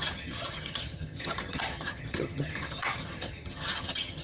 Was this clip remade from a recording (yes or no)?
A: yes